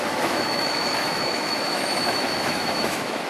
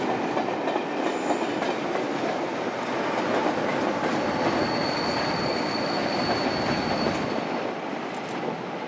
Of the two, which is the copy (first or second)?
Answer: first